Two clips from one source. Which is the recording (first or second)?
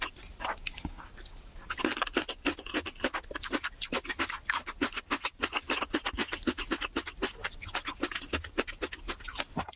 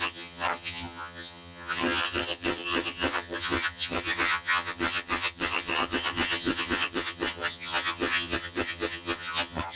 first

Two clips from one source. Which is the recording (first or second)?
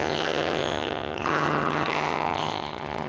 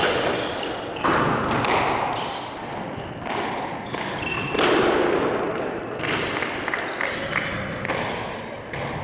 second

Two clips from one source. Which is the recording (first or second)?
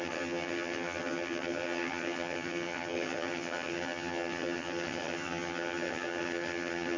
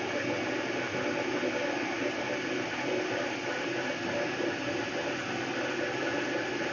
second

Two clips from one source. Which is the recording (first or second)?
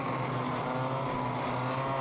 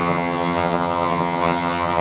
first